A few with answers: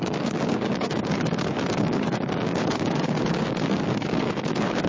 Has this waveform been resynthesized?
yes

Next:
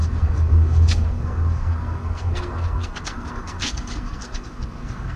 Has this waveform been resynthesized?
yes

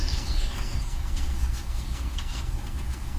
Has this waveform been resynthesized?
yes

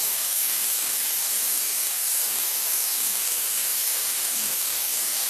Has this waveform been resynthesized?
yes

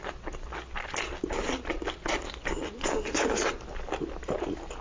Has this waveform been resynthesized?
no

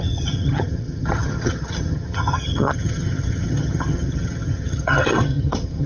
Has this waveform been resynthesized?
yes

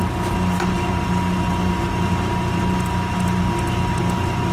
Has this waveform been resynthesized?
no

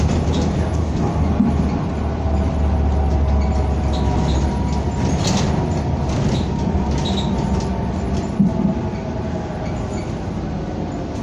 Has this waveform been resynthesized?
no